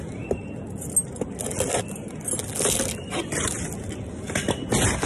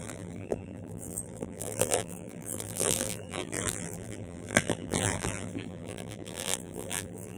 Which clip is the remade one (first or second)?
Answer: second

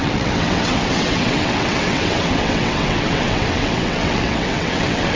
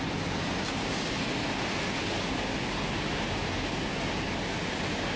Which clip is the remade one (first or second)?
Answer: first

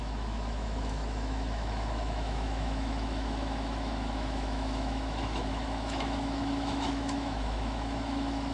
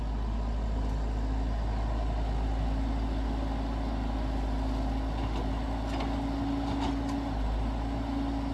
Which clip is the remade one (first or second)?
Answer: first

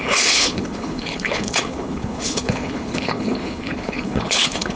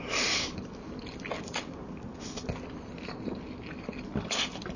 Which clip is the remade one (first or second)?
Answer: first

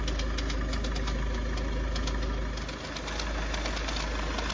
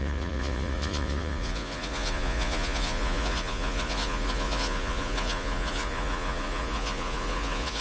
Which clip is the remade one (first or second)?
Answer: second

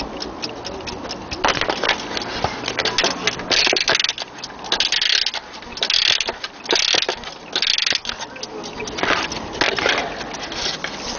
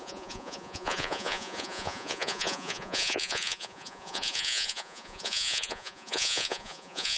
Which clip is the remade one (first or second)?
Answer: second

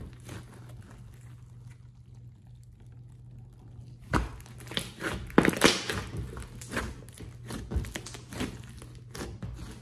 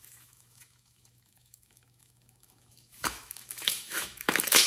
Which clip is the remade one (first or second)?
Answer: second